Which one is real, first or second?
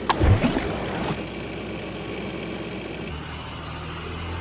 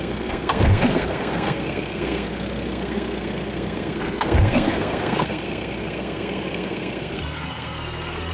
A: first